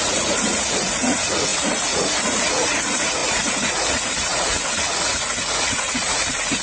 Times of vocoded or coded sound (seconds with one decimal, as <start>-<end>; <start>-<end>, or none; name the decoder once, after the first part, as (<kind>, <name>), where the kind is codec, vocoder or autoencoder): 0.0-6.6 (vocoder, Vocos)